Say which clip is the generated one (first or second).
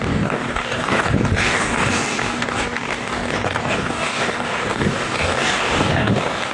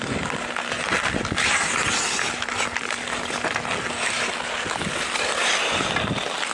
first